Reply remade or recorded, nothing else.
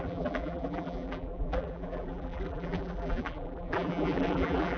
remade